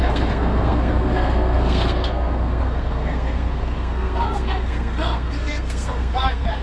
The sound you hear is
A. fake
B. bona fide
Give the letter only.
A